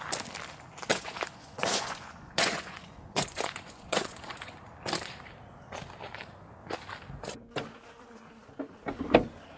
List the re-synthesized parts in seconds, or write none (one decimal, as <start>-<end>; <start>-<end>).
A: 0.9-4.5